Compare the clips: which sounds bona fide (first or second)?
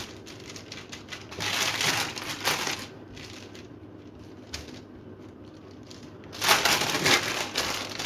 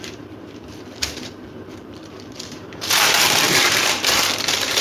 first